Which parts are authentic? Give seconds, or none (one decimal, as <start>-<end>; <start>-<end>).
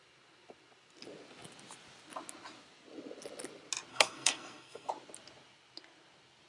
0.0-3.9; 4.9-6.5